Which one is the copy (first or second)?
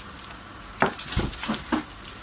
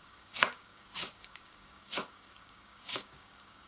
second